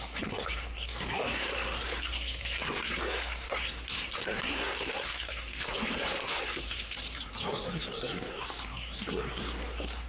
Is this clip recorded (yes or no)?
no